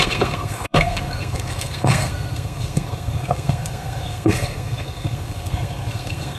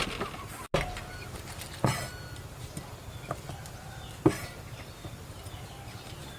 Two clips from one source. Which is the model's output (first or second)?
first